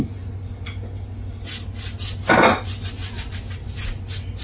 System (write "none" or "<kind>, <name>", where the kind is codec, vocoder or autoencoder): none